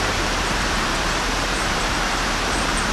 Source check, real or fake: fake